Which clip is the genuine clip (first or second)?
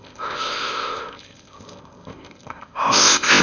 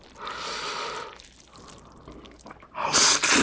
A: second